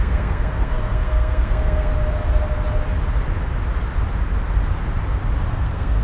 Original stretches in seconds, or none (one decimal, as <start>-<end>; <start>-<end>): 1.9-5.5